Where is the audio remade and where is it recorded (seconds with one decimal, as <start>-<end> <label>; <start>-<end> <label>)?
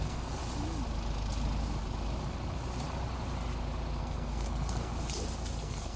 0.0-0.4 remade; 0.4-4.0 recorded; 4.0-4.9 remade; 4.9-5.6 recorded; 5.6-6.0 remade